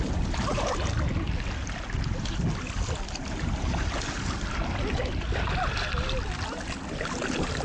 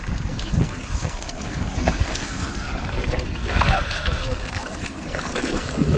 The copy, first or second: second